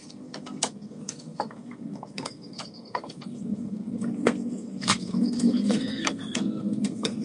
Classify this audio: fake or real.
fake